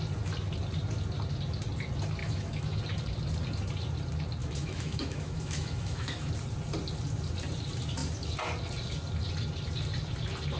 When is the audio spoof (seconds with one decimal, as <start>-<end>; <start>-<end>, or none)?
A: 2.2-2.8; 4.4-6.3